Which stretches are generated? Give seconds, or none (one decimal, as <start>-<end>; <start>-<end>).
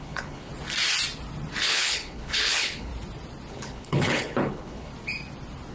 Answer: 0.0-0.5; 1.6-2.9; 3.5-4.9